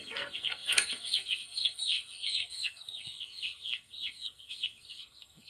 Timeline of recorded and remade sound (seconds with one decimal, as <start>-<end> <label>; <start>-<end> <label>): 0.0-5.5 remade